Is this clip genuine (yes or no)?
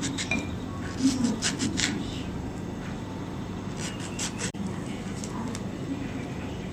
yes